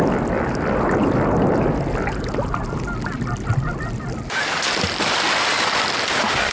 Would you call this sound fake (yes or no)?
no